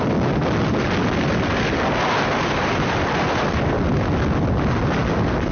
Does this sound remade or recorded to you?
recorded